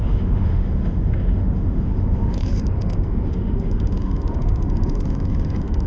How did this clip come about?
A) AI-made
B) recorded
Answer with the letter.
A